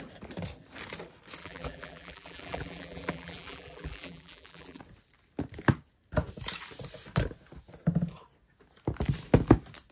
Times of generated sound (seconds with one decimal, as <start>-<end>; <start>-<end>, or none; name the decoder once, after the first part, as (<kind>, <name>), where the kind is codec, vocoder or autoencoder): 1.4-4.8 (vocoder, BigVGAN v2)